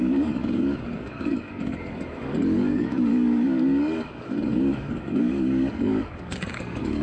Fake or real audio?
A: fake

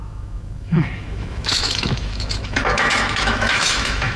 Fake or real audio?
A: fake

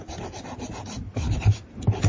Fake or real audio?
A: real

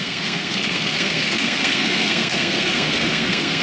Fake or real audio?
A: fake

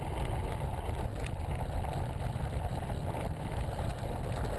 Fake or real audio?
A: real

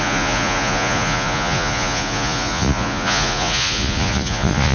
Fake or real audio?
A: fake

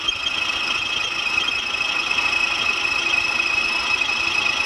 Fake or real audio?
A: real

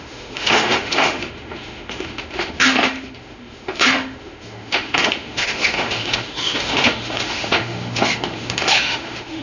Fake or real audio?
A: fake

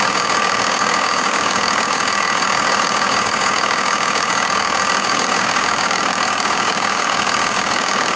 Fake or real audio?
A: fake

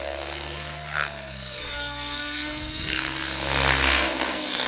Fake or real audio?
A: fake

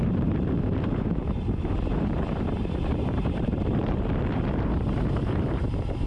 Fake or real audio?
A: fake